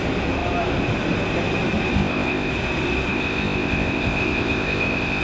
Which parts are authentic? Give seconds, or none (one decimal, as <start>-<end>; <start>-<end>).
0.0-1.9; 2.5-3.1